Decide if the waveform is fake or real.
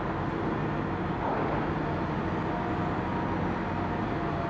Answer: real